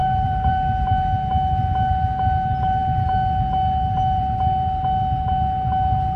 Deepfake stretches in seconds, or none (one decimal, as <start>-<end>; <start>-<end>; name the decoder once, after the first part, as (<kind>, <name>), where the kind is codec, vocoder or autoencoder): 0.0-0.5 (vocoder, BigVGAN v2)